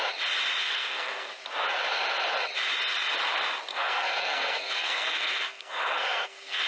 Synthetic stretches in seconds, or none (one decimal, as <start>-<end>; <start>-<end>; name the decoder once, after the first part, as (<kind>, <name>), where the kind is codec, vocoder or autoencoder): 0.6-1.3 (codec, SNAC); 3.7-6.7